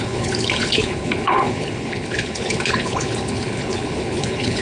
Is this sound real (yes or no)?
no